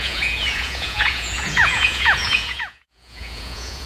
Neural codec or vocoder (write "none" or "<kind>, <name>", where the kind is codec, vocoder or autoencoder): vocoder, Vocos